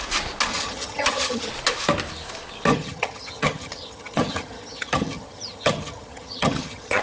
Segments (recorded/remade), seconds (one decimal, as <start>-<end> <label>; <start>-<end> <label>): 0.0-0.5 recorded; 0.5-1.5 remade; 1.5-2.7 recorded; 2.7-7.0 remade